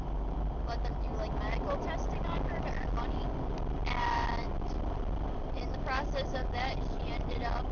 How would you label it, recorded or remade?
recorded